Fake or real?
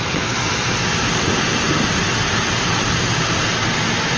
real